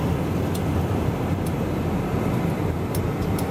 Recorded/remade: recorded